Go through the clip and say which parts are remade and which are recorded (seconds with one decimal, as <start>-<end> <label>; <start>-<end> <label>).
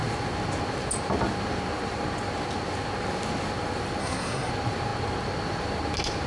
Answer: 0.0-4.0 recorded; 4.0-4.5 remade; 4.5-6.3 recorded